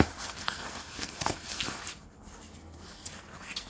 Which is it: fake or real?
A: fake